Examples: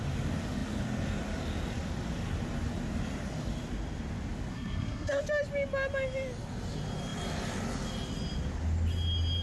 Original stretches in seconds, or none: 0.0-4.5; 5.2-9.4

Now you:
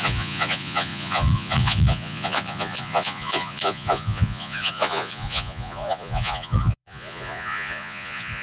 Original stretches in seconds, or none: none

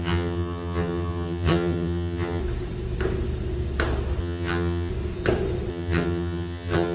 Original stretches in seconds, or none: 2.4-4.2; 4.9-5.7

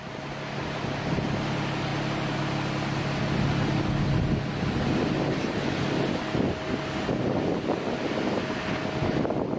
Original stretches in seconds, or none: 0.0-9.6

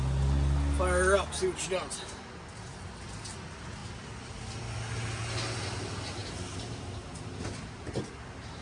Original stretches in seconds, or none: 0.0-3.8; 4.4-8.6

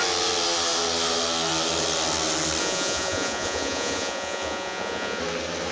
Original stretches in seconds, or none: 0.0-2.6; 5.2-5.7

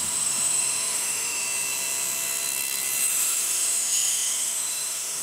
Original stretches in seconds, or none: 1.4-3.1

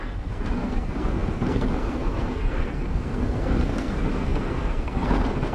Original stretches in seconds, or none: none